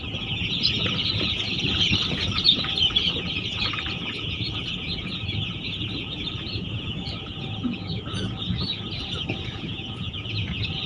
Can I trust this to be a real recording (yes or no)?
no